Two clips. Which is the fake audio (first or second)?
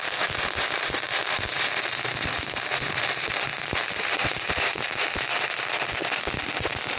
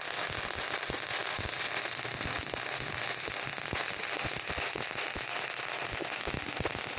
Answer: first